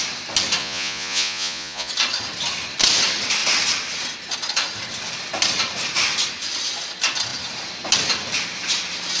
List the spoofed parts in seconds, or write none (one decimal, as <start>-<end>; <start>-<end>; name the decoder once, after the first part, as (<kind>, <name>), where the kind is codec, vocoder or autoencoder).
0.6-1.9 (vocoder, Vocos)